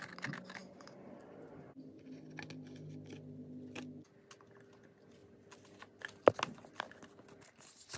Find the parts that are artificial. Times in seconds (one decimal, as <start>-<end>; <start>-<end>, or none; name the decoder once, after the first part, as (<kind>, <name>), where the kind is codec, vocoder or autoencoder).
none